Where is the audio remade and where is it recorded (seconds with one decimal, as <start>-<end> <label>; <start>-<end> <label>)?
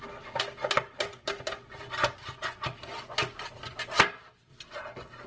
0.0-5.3 recorded